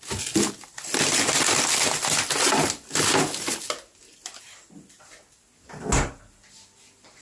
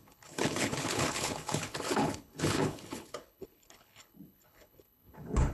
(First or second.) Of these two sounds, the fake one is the second